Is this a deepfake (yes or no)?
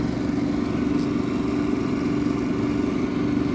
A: no